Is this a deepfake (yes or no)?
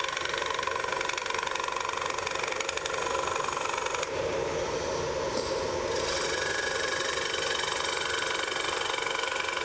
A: no